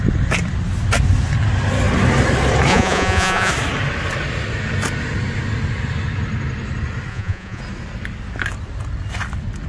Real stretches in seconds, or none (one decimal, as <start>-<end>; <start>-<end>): 0.0-2.7; 3.5-7.1; 7.6-9.7